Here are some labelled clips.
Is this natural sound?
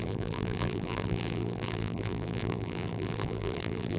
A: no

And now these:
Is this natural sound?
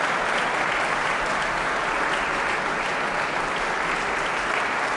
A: yes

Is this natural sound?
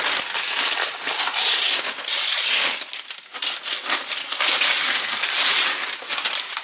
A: yes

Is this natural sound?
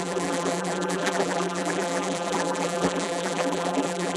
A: no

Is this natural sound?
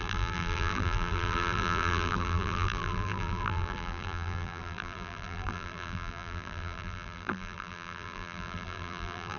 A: no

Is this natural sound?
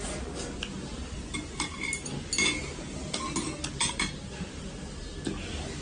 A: yes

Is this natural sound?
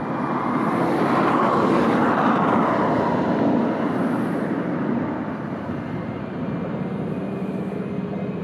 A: yes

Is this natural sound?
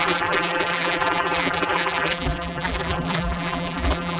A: no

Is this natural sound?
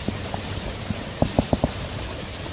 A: yes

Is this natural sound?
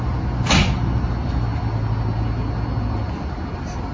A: yes